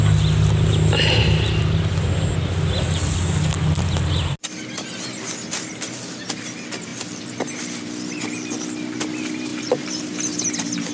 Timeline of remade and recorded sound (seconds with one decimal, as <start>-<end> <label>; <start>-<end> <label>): 0.0-9.5 recorded; 9.5-10.5 remade; 10.5-10.9 recorded